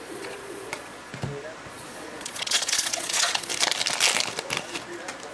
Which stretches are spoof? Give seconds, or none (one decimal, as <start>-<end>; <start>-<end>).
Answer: 0.0-1.1; 1.7-3.5